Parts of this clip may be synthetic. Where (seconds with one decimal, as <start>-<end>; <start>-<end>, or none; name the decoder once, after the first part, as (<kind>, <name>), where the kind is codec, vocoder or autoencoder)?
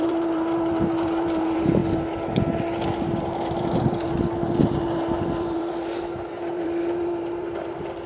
0.0-1.8 (vocoder, BigVGAN v2); 3.2-8.1